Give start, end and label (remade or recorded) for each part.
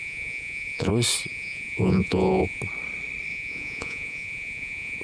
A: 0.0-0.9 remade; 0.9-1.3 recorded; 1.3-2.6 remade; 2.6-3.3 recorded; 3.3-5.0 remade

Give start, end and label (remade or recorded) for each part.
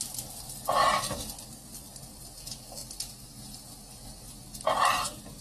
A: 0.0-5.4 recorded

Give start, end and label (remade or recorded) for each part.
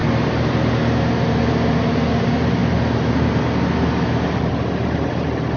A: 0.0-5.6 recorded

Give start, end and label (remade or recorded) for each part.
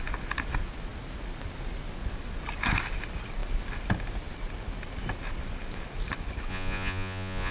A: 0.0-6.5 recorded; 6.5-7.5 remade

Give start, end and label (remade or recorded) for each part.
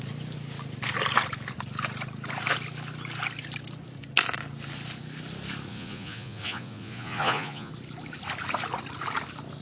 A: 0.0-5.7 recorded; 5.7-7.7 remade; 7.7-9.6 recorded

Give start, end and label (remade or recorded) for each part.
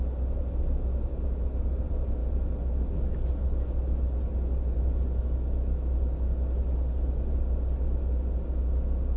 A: 0.0-9.2 recorded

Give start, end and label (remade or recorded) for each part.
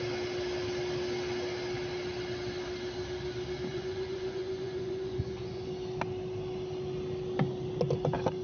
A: 0.0-3.7 recorded; 3.7-5.7 remade; 5.7-8.4 recorded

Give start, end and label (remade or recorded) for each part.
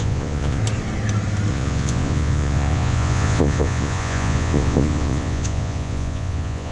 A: 0.0-0.6 remade; 0.6-1.5 recorded; 1.5-6.7 remade